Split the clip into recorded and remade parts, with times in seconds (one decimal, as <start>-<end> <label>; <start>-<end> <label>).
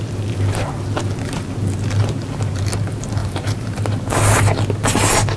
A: 0.0-3.2 recorded; 3.2-3.8 remade; 3.8-5.4 recorded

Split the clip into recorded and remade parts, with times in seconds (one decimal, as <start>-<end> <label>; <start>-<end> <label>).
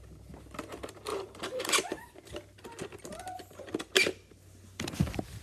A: 0.0-1.1 recorded; 1.1-2.6 remade; 2.6-5.4 recorded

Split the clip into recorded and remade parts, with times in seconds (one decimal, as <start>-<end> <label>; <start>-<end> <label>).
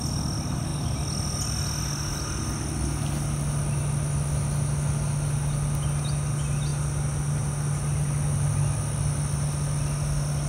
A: 0.0-10.5 recorded